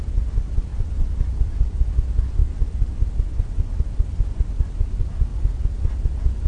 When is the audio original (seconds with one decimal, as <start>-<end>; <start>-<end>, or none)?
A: 0.0-0.7; 1.9-6.5